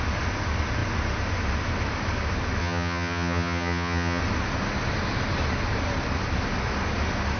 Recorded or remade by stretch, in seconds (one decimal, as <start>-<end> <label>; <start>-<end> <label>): 0.0-2.6 recorded; 2.6-4.2 remade; 4.2-7.4 recorded